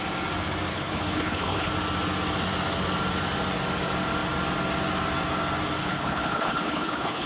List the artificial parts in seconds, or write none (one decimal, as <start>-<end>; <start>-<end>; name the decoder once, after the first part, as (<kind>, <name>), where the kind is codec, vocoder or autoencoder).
0.7-1.7 (codec, HILCodec); 5.8-7.3